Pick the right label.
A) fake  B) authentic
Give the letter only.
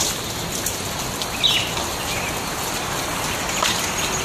B